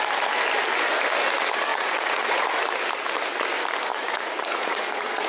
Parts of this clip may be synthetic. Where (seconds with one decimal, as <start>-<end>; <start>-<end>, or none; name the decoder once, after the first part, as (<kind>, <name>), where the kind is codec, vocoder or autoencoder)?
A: 1.7-2.5 (vocoder, Vocos); 3.9-5.3